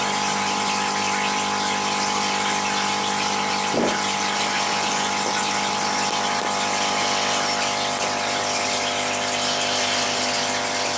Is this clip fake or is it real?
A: real